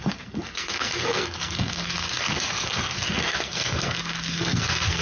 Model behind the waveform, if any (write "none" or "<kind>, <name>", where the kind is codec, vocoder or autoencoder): codec, SNAC